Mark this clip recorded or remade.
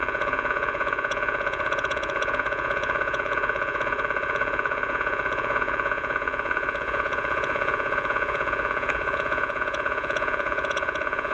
remade